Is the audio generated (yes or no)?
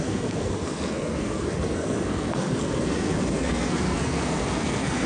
yes